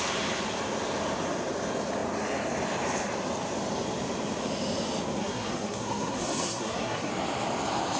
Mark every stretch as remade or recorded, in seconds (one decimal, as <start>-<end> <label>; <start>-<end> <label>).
0.0-5.2 recorded; 5.2-7.1 remade; 7.1-8.0 recorded